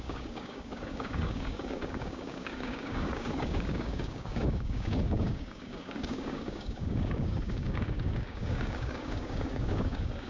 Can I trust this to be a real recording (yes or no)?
no